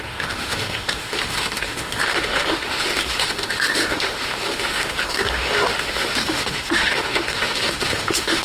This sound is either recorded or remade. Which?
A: remade